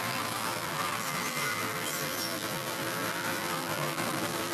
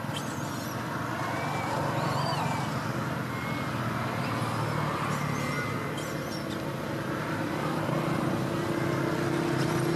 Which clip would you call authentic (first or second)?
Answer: second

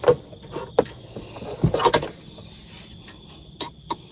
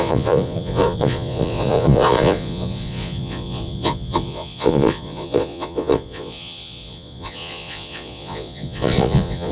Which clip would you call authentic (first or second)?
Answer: first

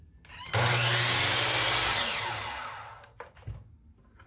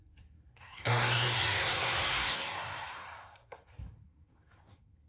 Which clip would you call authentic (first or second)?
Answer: first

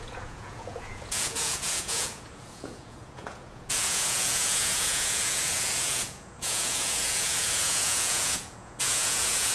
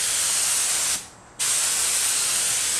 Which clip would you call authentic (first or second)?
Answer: second